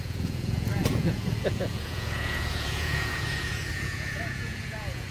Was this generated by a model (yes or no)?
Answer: yes